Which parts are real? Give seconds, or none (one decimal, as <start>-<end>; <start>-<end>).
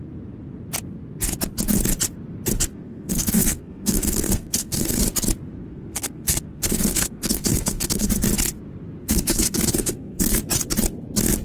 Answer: 0.0-2.7; 5.0-5.6; 8.1-9.0; 10.4-11.4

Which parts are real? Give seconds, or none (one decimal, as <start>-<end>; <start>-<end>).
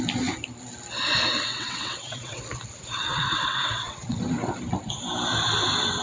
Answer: 0.0-1.5; 2.4-3.1; 4.2-6.0